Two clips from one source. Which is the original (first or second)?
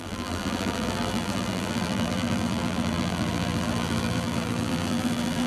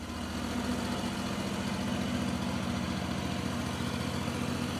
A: second